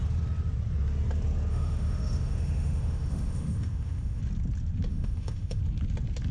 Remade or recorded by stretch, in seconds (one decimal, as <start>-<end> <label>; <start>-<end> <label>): 0.0-1.5 recorded; 1.5-4.2 remade; 4.2-4.9 recorded; 4.9-5.6 remade; 5.6-6.3 recorded